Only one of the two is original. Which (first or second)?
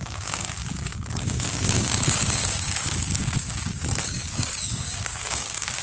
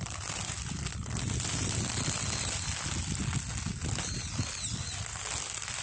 second